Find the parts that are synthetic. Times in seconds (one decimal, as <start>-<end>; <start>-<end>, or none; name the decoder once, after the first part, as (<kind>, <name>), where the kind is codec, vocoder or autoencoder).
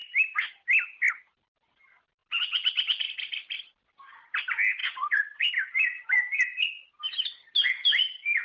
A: 4.8-5.5 (vocoder, Vocos)